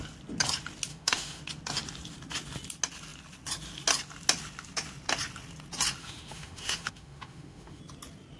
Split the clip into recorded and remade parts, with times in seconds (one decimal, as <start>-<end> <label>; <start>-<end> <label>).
0.0-0.9 recorded; 0.9-1.4 remade; 1.4-6.0 recorded; 6.0-7.8 remade; 7.8-8.4 recorded